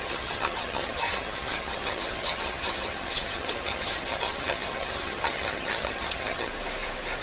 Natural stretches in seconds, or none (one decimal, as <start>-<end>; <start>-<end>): 6.5-7.2